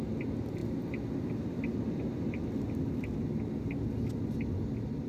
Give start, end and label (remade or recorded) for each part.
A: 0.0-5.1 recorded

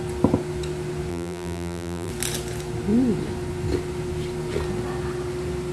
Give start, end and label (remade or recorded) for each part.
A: 0.0-1.1 recorded; 1.1-2.1 remade; 2.1-5.7 recorded

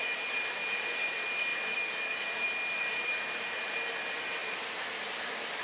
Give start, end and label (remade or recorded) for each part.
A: 0.0-5.6 recorded

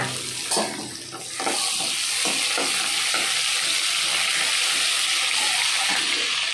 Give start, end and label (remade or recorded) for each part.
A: 0.0-5.8 recorded; 5.8-6.5 remade

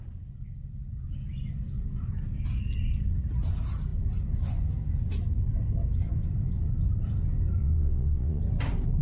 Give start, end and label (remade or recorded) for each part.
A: 0.0-7.6 recorded; 7.6-8.4 remade; 8.4-9.0 recorded

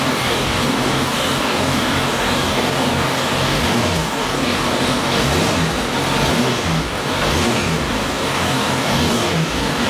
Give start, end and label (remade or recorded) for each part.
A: 0.0-5.3 remade; 5.3-6.3 recorded; 6.3-9.9 remade

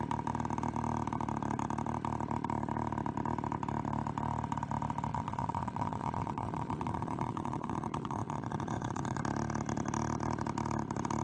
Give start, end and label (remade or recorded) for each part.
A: 0.0-5.1 recorded; 5.1-9.2 remade; 9.2-11.2 recorded